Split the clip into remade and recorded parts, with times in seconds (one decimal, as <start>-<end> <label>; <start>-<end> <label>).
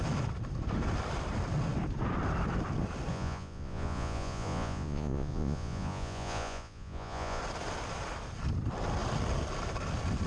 0.0-3.1 recorded; 3.1-7.4 remade; 7.4-10.3 recorded